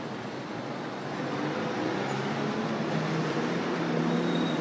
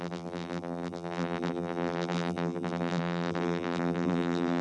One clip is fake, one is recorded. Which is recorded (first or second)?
first